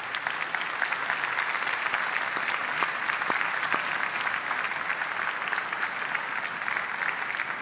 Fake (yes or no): no